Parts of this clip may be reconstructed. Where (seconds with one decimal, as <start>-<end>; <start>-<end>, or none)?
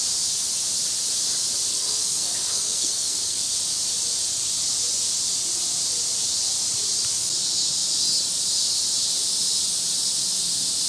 1.7-3.5